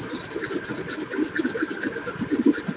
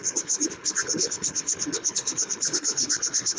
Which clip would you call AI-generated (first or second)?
second